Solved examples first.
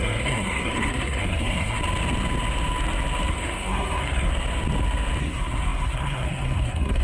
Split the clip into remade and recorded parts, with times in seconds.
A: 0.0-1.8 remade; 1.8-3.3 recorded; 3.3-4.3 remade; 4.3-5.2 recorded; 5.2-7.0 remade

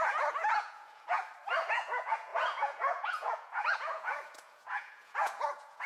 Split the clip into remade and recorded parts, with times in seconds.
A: 0.0-1.2 remade; 1.2-1.7 recorded; 1.7-5.9 remade

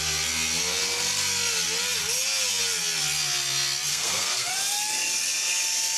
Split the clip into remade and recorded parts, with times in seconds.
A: 0.0-3.9 recorded; 3.9-4.5 remade; 4.5-6.0 recorded

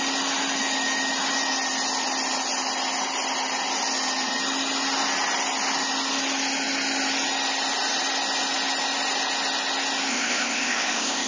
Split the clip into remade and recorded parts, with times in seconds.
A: 0.0-10.1 recorded; 10.1-11.3 remade

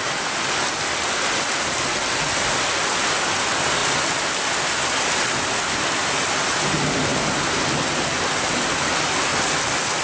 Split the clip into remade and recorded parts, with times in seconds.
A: 0.0-10.0 recorded

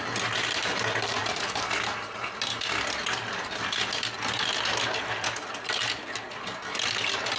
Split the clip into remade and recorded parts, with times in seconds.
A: 0.0-7.4 recorded

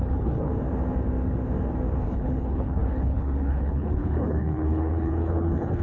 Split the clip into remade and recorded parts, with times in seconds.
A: 0.0-0.5 remade; 0.5-2.0 recorded; 2.0-5.8 remade

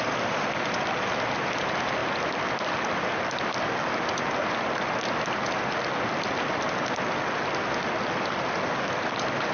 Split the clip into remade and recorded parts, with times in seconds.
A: 0.0-9.5 recorded